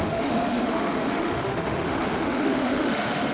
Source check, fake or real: fake